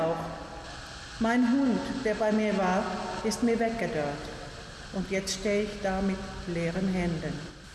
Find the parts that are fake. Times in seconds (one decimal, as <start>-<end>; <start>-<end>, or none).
none